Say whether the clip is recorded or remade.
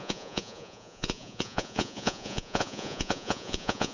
remade